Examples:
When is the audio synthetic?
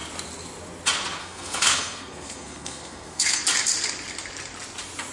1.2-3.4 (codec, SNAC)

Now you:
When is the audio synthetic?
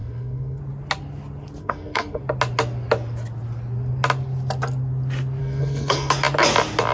0.0-0.6 (codec, SNAC); 1.6-2.2; 5.4-6.1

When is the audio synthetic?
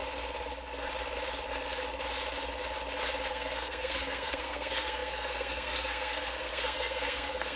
3.3-7.6 (codec, SNAC)